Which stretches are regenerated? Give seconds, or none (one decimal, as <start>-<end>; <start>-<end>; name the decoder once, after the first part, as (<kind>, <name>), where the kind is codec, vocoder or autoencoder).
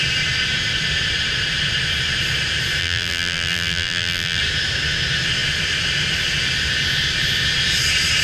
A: 2.8-4.4 (vocoder, BigVGAN v2)